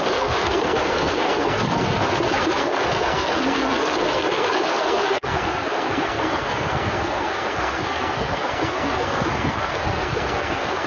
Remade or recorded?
remade